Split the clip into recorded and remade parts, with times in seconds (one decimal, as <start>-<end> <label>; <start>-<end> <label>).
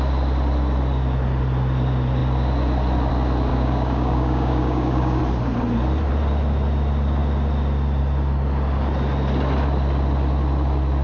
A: 0.0-3.5 recorded; 3.5-5.2 remade; 5.2-11.0 recorded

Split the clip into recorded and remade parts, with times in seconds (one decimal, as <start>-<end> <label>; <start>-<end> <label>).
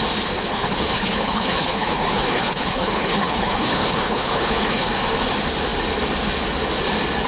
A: 0.0-0.5 recorded; 0.5-4.9 remade; 4.9-7.3 recorded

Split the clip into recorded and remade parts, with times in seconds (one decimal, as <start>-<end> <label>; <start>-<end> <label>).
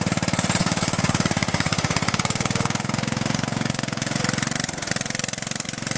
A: 0.0-0.6 recorded; 0.6-4.2 remade; 4.2-6.0 recorded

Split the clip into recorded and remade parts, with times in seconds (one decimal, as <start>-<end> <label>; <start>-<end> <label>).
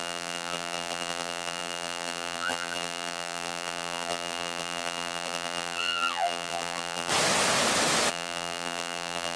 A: 0.0-7.1 remade; 7.1-8.1 recorded; 8.1-9.4 remade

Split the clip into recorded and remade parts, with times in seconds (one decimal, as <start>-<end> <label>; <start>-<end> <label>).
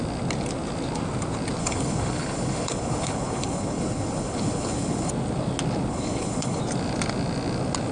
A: 0.0-1.6 recorded; 1.6-5.1 remade; 5.1-5.9 recorded; 5.9-6.6 remade; 6.6-7.9 recorded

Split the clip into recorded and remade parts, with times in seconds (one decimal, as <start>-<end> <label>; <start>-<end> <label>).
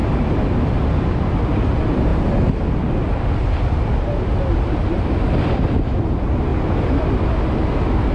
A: 0.0-8.1 recorded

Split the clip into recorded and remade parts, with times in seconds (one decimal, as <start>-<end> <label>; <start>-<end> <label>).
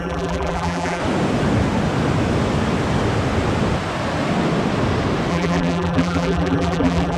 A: 0.0-1.0 remade; 1.0-5.3 recorded; 5.3-7.2 remade